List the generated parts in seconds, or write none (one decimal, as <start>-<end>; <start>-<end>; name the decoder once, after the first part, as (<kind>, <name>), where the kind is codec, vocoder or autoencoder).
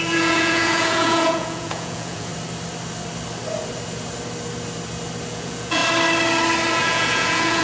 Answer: 0.0-2.3 (vocoder, Vocos); 5.3-5.8; 6.7-7.6